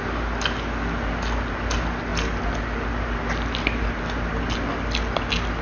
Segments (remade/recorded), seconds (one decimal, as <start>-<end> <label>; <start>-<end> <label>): 0.0-5.6 recorded